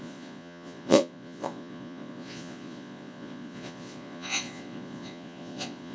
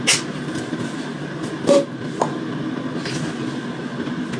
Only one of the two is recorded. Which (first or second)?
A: second